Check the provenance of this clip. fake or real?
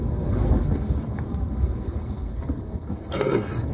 fake